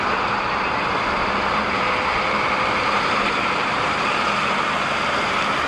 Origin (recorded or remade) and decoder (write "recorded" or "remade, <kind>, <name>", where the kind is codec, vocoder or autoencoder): remade, vocoder, BigVGAN v2